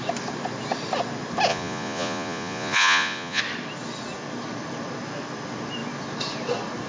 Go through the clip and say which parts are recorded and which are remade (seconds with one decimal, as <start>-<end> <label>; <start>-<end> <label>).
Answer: 0.0-1.5 recorded; 1.5-3.4 remade; 3.4-6.9 recorded